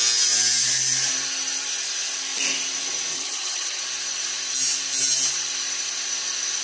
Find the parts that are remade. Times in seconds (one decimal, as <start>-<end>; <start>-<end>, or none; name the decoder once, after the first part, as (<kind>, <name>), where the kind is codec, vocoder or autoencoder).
3.1-3.8 (vocoder, HiFi-GAN)